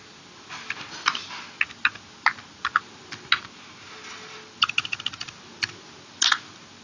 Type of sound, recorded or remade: recorded